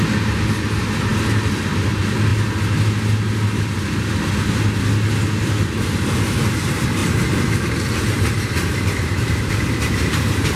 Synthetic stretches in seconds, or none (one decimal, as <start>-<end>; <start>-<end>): 7.0-10.6

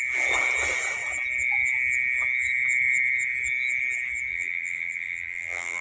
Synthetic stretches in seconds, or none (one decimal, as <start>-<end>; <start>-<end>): 4.3-5.8

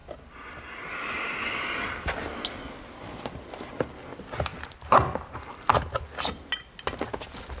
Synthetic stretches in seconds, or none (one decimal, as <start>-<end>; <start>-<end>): 4.5-5.5